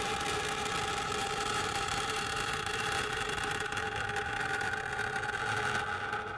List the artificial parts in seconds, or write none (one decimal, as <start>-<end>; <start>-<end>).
1.2-4.8